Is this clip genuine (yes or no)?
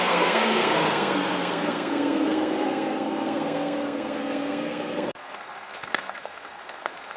no